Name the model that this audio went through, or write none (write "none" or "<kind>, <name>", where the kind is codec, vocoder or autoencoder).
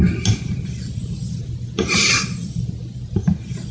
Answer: none